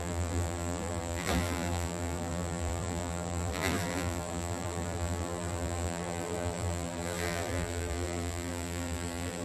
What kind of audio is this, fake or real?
fake